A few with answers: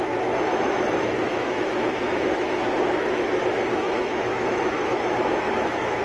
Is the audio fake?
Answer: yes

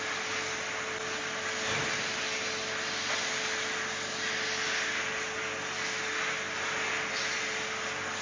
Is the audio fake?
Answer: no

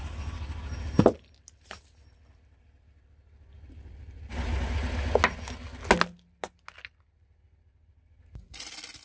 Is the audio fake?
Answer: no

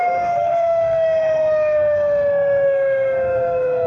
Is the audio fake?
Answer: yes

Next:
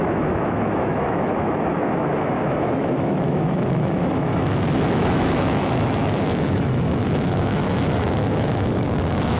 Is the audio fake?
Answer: yes